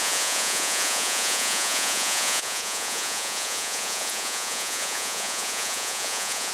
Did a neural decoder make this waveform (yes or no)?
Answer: yes